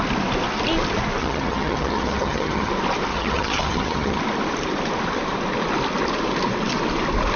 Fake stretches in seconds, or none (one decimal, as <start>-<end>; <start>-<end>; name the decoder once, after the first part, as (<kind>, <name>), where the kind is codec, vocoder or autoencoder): 1.2-2.7 (vocoder, HiFi-GAN); 3.1-4.2